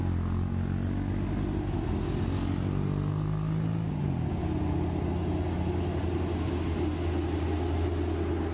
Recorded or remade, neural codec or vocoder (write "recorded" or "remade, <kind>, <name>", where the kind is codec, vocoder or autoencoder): recorded